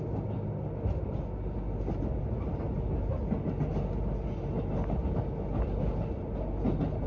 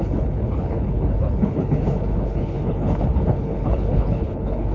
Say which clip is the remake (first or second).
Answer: second